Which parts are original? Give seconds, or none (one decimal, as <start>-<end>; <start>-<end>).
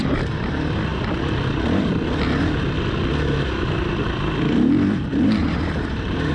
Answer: 0.0-5.4